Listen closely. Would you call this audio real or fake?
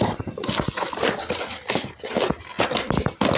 real